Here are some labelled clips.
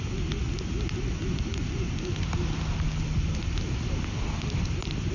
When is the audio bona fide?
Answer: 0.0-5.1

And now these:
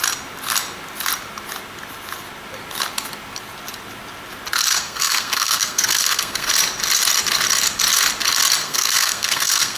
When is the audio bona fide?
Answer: 0.0-4.7; 6.5-8.6